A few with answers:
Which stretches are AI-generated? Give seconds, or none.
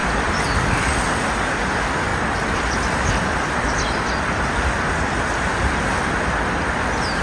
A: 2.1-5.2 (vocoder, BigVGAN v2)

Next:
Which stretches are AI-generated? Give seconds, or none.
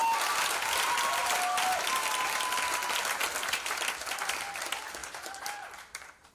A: 1.2-1.9 (vocoder, BigVGAN v2); 5.0-6.3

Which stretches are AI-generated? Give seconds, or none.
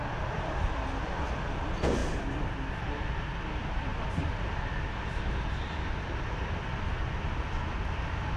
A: 3.9-4.6 (vocoder, BigVGAN v2)